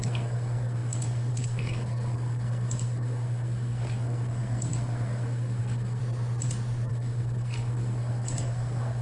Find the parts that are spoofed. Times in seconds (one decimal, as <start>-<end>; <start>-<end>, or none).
0.0-6.0; 6.9-9.0